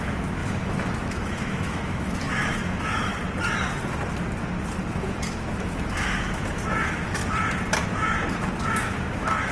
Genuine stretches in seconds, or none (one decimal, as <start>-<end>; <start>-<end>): 3.1-4.9; 7.2-8.7